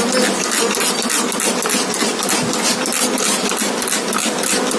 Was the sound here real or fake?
real